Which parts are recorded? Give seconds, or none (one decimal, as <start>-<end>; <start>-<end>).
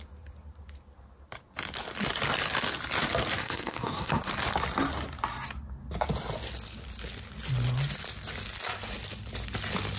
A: 0.0-3.4; 4.2-10.0